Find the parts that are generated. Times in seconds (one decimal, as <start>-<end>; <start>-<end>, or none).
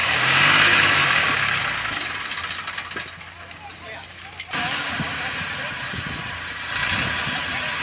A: 0.0-1.6; 4.6-5.4